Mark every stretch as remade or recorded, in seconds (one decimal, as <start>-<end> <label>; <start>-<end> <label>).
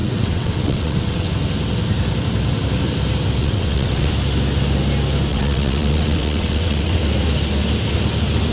0.0-1.3 remade; 1.3-3.4 recorded; 3.4-4.1 remade; 4.1-5.3 recorded; 5.3-7.0 remade; 7.0-8.5 recorded